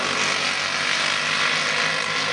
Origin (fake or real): real